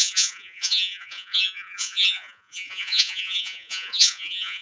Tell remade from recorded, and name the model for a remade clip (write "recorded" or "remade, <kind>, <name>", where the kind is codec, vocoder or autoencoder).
remade, vocoder, Vocos